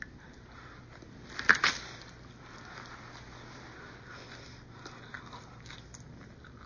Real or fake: real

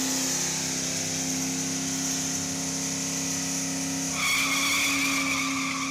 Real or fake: real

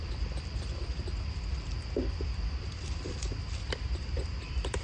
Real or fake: fake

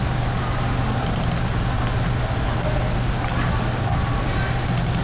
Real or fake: real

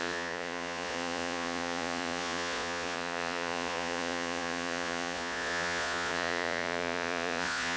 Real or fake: fake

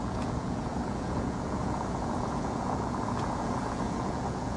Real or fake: fake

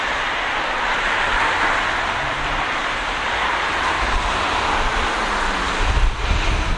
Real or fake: real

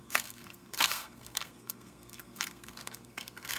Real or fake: fake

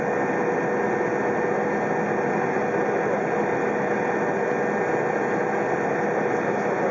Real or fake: real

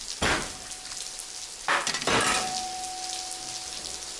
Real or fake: real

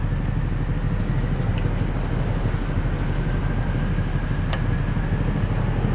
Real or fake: real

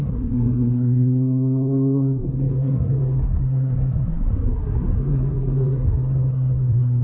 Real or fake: fake